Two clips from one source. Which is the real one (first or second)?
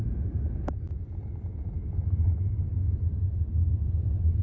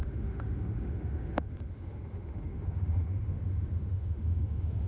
first